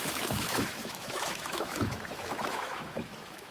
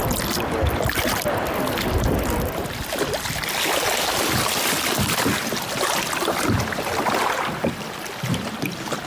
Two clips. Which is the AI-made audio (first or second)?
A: first